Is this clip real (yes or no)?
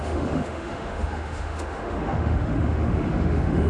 no